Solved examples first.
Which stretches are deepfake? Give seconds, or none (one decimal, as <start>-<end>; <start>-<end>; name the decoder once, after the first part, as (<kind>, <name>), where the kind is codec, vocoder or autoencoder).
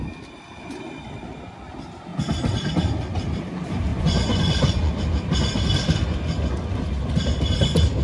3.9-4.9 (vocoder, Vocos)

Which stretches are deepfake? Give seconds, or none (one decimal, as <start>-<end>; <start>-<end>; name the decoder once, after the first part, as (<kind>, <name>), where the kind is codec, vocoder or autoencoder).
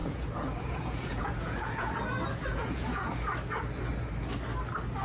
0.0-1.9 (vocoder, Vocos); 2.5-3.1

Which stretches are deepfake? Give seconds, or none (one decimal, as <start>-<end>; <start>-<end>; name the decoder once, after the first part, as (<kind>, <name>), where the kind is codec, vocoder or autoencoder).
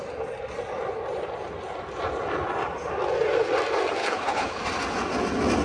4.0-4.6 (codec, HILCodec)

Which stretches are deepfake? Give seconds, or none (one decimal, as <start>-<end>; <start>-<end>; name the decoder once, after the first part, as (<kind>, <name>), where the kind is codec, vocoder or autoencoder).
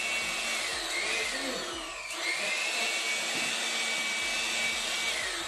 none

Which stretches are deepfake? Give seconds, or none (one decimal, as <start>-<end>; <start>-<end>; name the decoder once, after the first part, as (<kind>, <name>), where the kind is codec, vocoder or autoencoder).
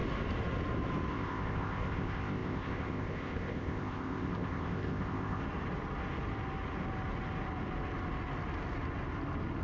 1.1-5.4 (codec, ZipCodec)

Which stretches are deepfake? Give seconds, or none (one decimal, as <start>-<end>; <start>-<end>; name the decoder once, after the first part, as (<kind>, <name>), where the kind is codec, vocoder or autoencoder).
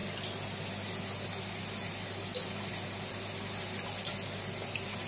none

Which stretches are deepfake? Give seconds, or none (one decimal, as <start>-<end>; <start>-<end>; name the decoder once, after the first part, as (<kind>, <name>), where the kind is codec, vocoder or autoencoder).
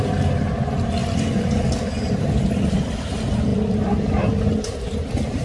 none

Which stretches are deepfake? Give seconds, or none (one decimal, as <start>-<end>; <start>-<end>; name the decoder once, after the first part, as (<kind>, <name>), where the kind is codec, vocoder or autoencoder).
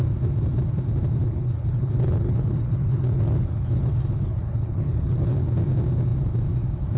1.2-5.4 (codec, HILCodec)